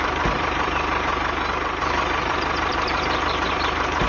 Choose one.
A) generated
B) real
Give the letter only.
A